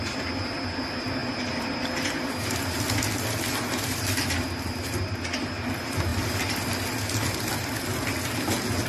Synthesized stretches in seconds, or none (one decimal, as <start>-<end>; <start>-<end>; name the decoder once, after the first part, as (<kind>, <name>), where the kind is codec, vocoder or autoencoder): none